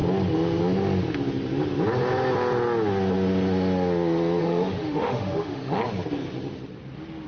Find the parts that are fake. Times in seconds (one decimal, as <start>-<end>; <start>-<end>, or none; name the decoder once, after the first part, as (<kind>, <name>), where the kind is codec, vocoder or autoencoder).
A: 4.4-5.8 (autoencoder, DAC-VAE)